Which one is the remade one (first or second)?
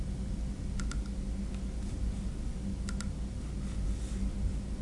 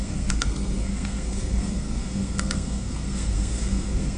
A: second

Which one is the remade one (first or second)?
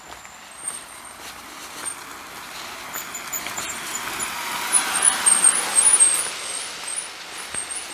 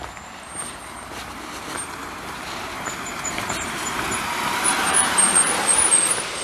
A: second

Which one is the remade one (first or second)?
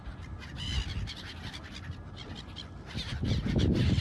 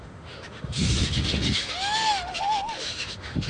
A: second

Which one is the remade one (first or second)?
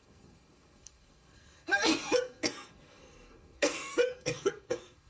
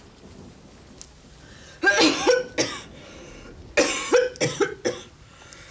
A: first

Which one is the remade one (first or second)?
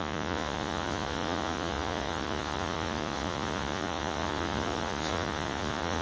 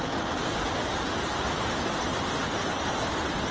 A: first